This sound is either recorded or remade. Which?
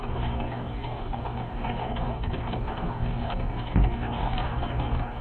remade